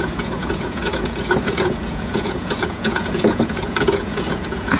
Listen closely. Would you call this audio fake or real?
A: fake